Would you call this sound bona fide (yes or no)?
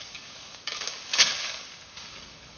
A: no